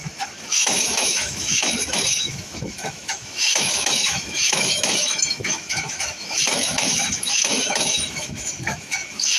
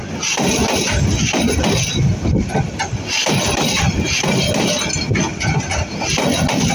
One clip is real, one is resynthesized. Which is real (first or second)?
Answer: second